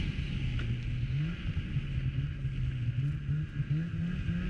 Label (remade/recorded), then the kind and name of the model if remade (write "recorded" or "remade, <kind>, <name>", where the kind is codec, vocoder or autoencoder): recorded